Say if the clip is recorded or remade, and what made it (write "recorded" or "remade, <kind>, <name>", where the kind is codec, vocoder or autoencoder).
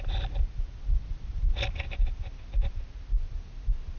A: recorded